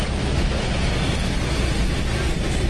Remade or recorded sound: recorded